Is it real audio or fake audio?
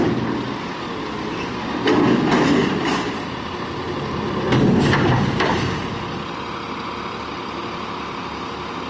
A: real